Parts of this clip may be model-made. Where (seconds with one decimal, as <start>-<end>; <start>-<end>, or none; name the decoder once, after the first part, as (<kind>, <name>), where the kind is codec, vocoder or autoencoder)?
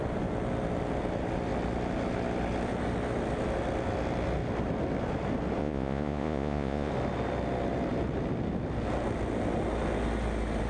5.6-6.9 (vocoder, Vocos)